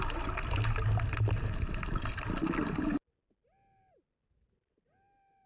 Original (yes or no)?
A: yes